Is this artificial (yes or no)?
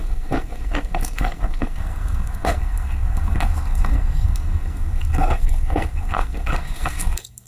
yes